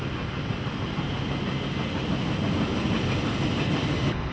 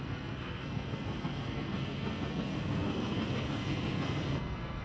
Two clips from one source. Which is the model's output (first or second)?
second